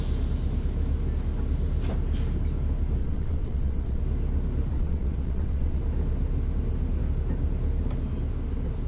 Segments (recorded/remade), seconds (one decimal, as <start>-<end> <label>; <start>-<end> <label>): 0.0-3.0 recorded; 3.0-4.0 remade; 4.0-4.7 recorded; 4.7-5.8 remade; 5.8-8.9 recorded